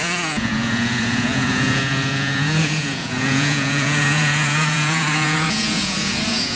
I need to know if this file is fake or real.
fake